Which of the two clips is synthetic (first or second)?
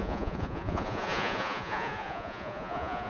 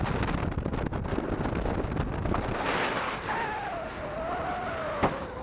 first